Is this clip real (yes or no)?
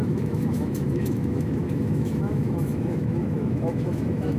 no